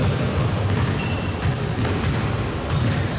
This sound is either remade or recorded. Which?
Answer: recorded